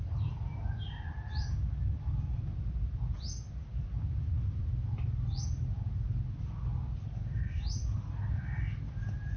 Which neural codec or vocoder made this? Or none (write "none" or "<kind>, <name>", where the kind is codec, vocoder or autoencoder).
none